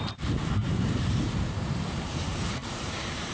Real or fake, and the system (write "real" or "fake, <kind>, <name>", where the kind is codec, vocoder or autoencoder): fake, vocoder, BigVGAN v2